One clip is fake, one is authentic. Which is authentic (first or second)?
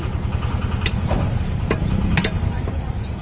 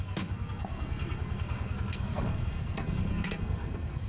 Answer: first